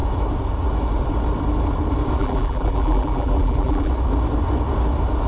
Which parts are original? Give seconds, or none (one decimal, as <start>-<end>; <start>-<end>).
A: 0.0-2.2; 3.9-5.3